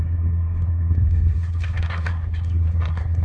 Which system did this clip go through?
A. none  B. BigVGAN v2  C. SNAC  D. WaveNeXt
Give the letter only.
C